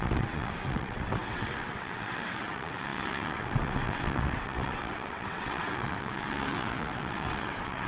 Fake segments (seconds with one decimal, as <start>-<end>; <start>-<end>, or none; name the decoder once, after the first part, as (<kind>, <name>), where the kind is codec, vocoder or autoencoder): 0.0-7.9 (vocoder, WaveNeXt)